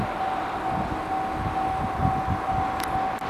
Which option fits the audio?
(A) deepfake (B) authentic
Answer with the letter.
B